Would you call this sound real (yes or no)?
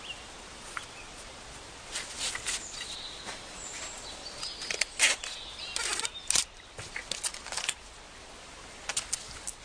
yes